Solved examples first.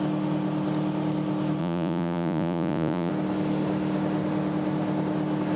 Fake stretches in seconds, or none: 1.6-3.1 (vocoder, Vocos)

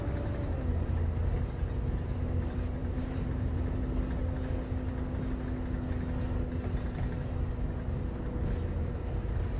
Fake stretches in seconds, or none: 2.8-3.8 (vocoder, BigVGAN v2)

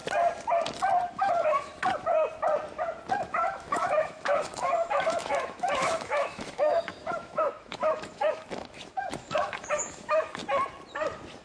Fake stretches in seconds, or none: 1.1-1.7 (autoencoder, DAC-VAE); 3.2-10.4

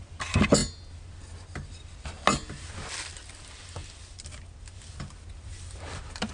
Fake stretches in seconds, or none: 3.8-6.3 (vocoder, BigVGAN v2)

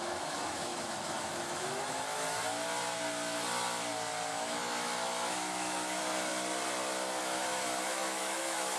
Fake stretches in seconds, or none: 0.0-2.4 (autoencoder, DAC-VAE); 4.3-6.3; 7.2-8.8

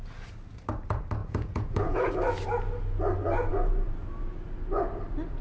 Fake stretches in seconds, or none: 1.2-2.1 (vocoder, Vocos)

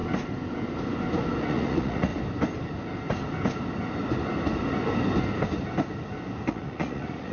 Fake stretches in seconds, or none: 1.4-2.1 (vocoder, Vocos); 6.5-7.3

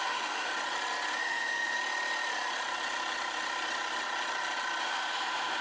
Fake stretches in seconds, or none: 0.0-0.5 (autoencoder, DAC-VAE); 1.2-1.8; 4.8-5.6